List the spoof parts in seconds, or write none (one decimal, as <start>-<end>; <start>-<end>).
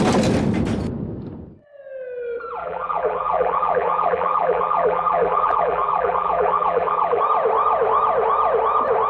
2.6-7.2